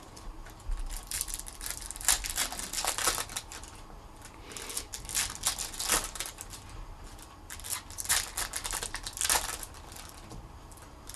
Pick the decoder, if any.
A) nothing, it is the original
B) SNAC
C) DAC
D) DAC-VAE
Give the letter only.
A